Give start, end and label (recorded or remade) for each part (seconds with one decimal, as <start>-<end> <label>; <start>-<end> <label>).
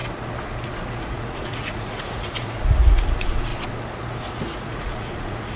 0.0-1.0 recorded; 1.0-3.5 remade; 3.5-4.2 recorded; 4.2-5.6 remade